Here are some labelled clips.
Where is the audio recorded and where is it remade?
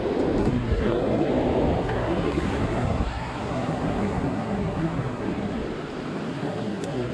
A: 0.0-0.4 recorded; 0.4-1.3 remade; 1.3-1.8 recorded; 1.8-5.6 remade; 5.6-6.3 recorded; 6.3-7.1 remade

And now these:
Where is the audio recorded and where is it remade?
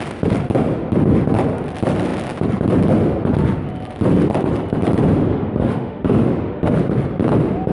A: 0.0-5.3 recorded; 5.3-6.7 remade; 6.7-7.7 recorded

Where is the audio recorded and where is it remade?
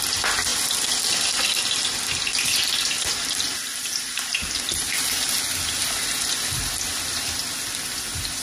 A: 0.0-3.7 recorded; 3.7-6.5 remade; 6.5-8.4 recorded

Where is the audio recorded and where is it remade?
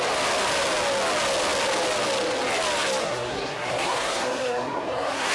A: 0.0-3.0 recorded; 3.0-5.3 remade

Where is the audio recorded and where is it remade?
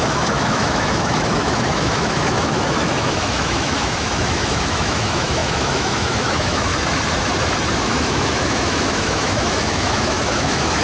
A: 0.0-6.7 remade; 6.7-7.8 recorded; 7.8-10.8 remade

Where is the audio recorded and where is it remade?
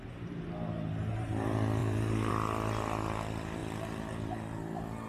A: 0.0-1.8 recorded; 1.8-2.3 remade; 2.3-5.1 recorded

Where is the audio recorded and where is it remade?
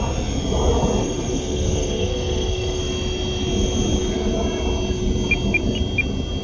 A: 0.0-1.0 recorded; 1.0-2.8 remade; 2.8-6.4 recorded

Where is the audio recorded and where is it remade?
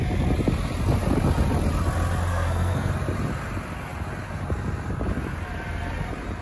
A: 0.0-2.3 recorded; 2.3-2.9 remade; 2.9-6.4 recorded